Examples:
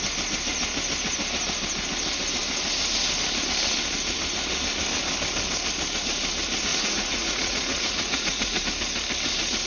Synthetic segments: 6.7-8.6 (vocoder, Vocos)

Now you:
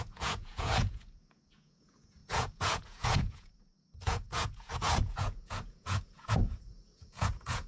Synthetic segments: 0.0-7.7 (vocoder, Vocos)